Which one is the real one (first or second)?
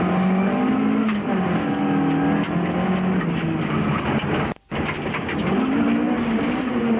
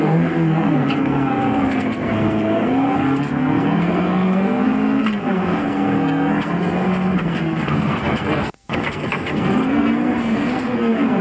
first